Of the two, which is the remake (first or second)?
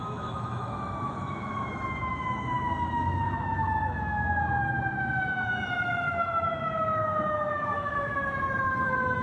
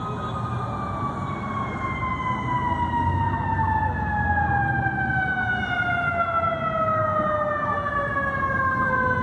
first